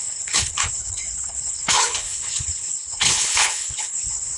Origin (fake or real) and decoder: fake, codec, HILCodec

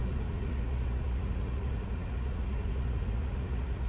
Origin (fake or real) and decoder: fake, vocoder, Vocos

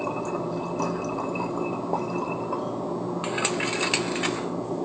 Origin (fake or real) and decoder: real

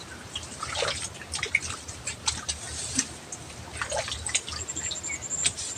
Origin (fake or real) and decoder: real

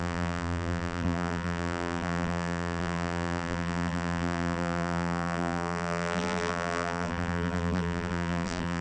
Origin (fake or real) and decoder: fake, vocoder, BigVGAN v2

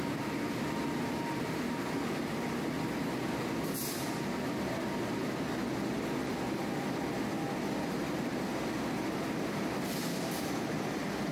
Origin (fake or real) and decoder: real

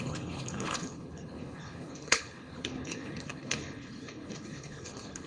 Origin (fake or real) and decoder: fake, codec, HILCodec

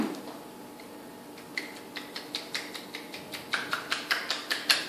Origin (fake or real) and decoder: real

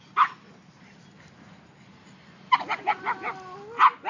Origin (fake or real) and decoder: real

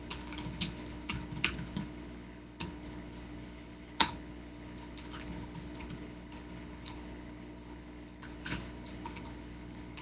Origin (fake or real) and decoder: fake, codec, HILCodec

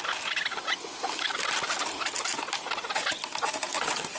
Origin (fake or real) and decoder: real